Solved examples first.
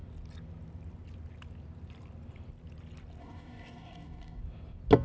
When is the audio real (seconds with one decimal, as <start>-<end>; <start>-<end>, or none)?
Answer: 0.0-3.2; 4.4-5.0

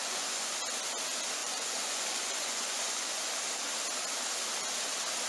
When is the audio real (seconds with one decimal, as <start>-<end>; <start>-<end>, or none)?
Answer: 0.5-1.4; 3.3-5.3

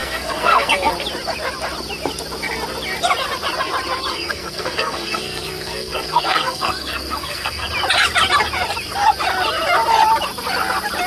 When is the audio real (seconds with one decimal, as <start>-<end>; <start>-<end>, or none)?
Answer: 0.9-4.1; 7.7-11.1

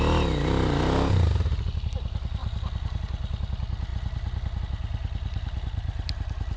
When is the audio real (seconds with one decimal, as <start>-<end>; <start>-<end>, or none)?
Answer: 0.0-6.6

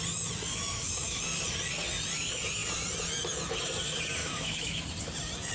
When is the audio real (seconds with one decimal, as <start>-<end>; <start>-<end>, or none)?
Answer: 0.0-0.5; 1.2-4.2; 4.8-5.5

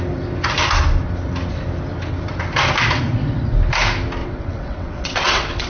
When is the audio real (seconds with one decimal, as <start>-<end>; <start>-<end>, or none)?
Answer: 0.0-4.2

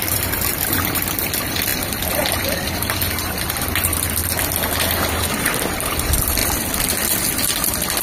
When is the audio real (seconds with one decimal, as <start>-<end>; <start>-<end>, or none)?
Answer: 4.2-5.1

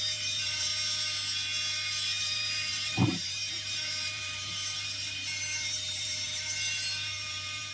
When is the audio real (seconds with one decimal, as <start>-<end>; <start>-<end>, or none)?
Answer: 0.7-2.2